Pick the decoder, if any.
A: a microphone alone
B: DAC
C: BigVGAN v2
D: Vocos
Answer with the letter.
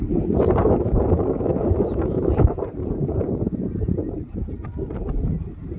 C